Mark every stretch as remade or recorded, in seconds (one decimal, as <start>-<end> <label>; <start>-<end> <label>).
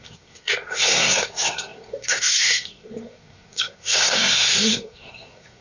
0.0-5.6 remade